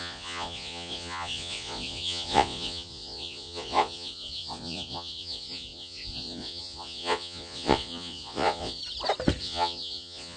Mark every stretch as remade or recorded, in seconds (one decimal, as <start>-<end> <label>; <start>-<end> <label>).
0.0-8.8 remade; 8.8-9.4 recorded; 9.4-10.4 remade